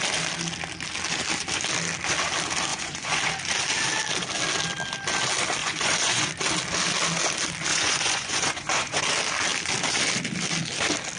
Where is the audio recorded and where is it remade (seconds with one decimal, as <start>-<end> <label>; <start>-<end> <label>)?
0.0-2.7 recorded; 2.7-3.2 remade; 3.2-5.6 recorded; 5.6-6.3 remade; 6.3-7.7 recorded; 7.7-9.0 remade; 9.0-11.2 recorded